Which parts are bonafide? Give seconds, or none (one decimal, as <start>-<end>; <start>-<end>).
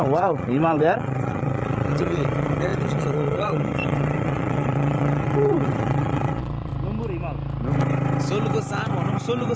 6.7-9.6